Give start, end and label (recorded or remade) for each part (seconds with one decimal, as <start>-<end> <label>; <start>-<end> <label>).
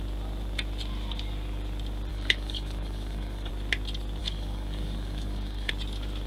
0.0-2.1 recorded; 2.1-3.5 remade; 3.5-4.2 recorded; 4.2-5.7 remade; 5.7-6.3 recorded